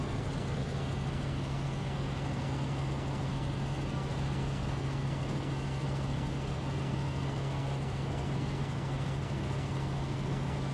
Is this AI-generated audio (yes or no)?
yes